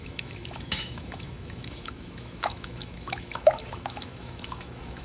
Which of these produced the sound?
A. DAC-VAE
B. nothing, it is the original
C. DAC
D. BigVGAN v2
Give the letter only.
A